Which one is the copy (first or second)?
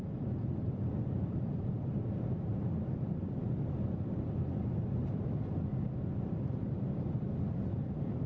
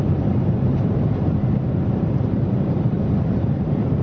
second